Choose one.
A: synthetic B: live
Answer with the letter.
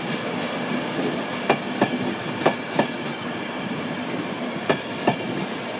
B